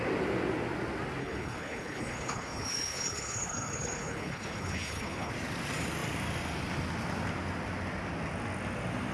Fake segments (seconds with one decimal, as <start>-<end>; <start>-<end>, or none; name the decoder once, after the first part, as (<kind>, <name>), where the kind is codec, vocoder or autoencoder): 1.2-5.3 (codec, HILCodec)